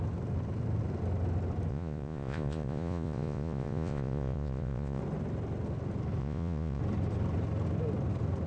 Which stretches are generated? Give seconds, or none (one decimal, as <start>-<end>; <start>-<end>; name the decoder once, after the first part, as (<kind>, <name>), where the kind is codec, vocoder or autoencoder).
1.7-5.0 (vocoder, Vocos); 6.2-6.8